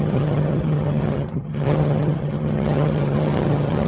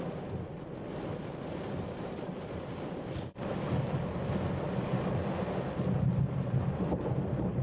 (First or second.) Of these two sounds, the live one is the second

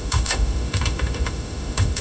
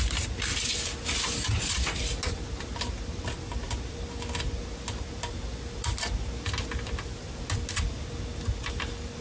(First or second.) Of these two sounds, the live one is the second